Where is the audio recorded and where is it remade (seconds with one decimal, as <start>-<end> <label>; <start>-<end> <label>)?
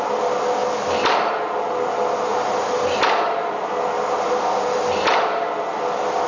0.0-6.3 recorded